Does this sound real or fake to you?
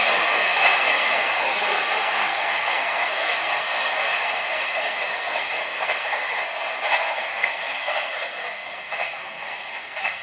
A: fake